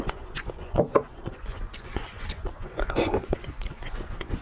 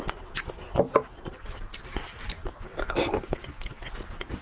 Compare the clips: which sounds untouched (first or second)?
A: second